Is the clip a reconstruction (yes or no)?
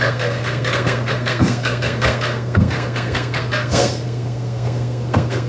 yes